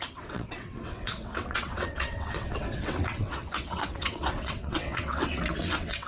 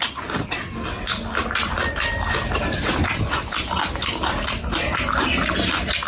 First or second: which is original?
second